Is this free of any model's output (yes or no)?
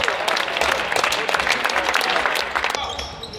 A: yes